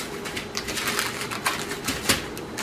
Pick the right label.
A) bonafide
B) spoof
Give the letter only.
A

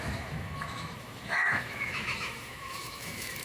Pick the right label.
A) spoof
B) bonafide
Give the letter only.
A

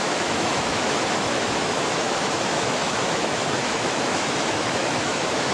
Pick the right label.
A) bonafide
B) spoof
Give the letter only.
B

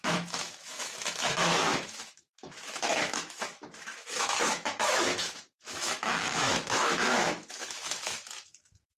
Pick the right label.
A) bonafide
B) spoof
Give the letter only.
B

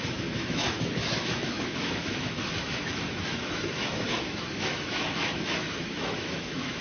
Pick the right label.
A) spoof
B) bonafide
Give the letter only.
A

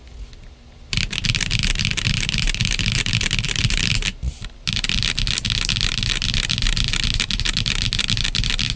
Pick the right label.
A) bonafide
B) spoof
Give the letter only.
A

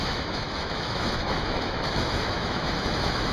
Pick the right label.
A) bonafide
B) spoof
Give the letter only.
B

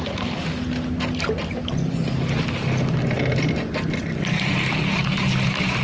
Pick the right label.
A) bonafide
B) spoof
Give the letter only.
A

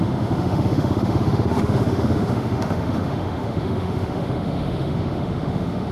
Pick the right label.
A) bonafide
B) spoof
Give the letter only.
B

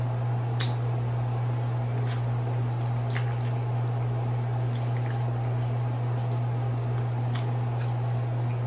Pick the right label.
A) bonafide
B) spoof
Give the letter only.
A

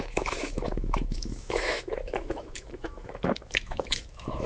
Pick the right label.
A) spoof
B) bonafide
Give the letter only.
A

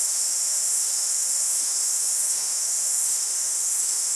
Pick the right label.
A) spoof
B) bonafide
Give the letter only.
A